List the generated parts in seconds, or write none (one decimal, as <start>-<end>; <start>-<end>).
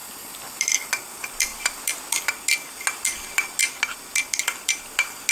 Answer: 0.0-0.9